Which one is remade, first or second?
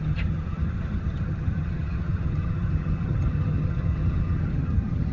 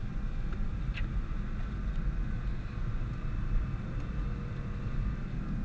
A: first